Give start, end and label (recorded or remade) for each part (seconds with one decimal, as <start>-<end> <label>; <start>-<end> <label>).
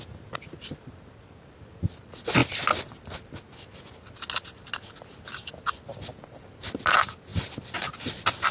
0.0-8.5 recorded